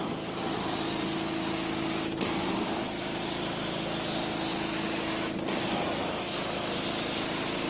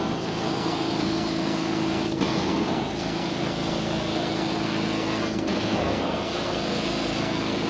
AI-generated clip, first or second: second